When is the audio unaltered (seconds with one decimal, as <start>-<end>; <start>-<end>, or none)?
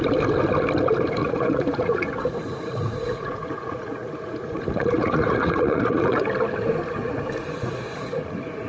0.0-1.2; 6.2-7.0